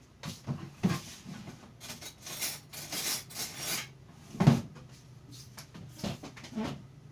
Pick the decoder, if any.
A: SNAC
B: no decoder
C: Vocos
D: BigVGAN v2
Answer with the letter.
B